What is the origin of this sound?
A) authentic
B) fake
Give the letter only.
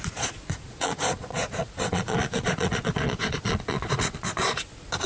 B